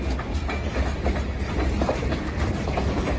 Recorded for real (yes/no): yes